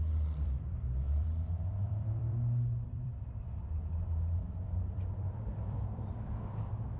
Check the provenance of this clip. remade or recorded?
remade